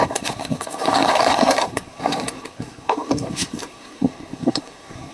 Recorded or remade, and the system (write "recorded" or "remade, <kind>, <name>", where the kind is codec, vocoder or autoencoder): remade, codec, SNAC